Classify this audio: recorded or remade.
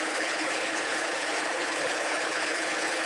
remade